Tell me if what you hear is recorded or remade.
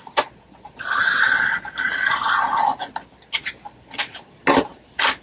recorded